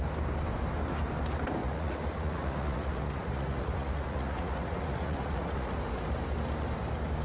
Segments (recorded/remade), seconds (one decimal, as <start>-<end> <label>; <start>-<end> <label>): 0.0-1.6 recorded; 1.6-5.8 remade; 5.8-7.2 recorded